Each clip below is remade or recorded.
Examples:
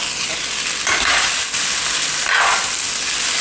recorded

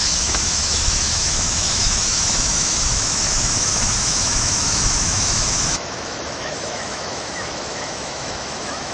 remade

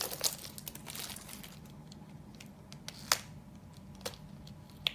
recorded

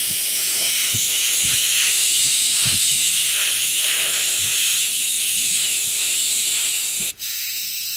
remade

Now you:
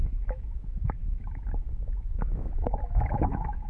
remade